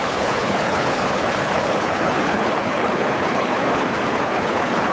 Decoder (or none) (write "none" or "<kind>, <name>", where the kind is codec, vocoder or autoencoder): codec, HILCodec